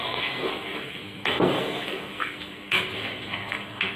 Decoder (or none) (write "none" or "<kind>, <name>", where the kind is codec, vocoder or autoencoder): codec, SNAC